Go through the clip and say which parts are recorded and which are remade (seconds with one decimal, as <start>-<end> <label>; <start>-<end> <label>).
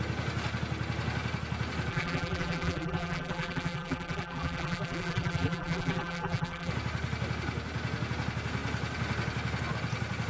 0.0-1.9 recorded; 1.9-6.7 remade; 6.7-10.3 recorded